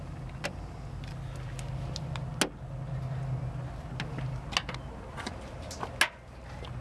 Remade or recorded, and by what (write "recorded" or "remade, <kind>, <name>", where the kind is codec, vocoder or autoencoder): recorded